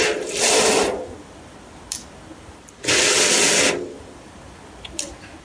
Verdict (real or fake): real